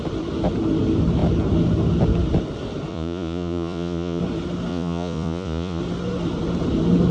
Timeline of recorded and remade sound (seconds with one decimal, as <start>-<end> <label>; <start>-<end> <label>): 0.0-2.9 recorded; 2.9-4.2 remade; 4.2-4.7 recorded; 4.7-5.8 remade; 5.8-7.1 recorded